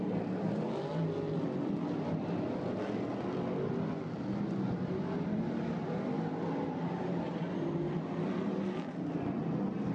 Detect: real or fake real